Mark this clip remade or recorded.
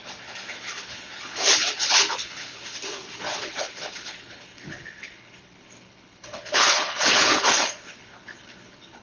remade